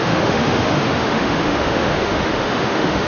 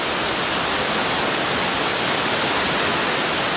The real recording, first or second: second